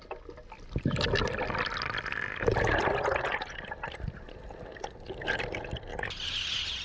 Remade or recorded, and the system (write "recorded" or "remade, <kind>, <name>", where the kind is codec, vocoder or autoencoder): recorded